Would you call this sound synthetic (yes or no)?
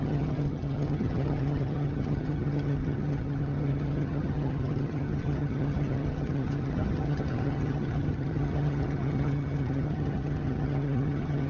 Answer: yes